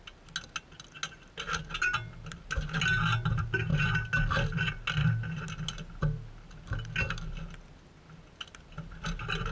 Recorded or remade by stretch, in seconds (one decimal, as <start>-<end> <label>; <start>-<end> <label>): 0.0-9.5 recorded